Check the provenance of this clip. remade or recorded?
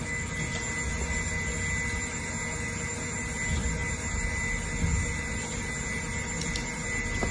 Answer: recorded